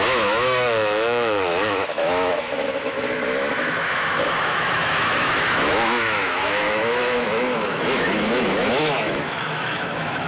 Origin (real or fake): fake